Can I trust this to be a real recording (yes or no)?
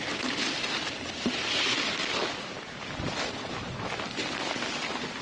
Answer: yes